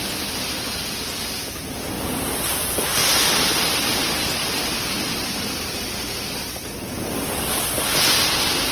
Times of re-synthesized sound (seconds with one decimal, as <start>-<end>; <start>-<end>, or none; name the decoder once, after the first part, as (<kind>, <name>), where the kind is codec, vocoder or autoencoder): 3.0-4.0 (vocoder, BigVGAN v2)